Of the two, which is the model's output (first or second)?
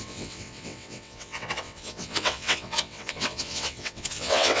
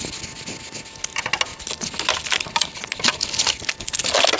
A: first